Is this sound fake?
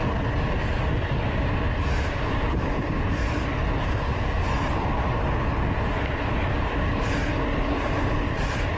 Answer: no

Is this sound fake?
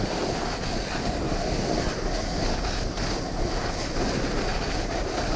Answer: no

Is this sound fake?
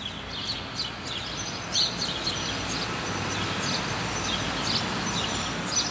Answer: no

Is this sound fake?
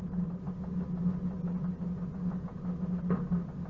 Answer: no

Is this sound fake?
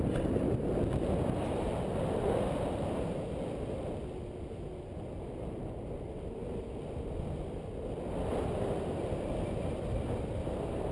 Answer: no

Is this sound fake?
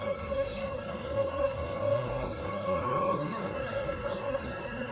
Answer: yes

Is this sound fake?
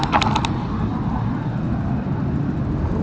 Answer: no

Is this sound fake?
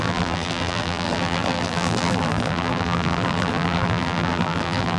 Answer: yes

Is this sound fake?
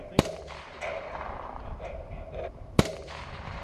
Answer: yes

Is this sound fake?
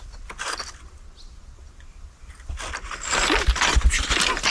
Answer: no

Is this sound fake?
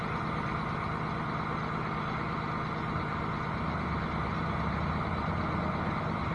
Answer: no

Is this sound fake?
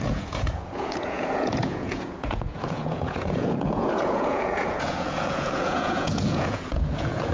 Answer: yes